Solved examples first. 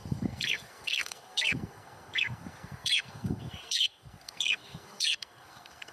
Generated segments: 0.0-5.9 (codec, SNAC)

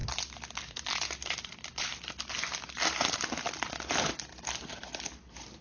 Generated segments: none

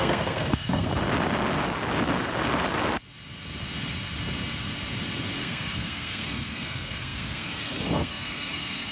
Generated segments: 0.0-0.9 (codec, SNAC); 5.4-8.9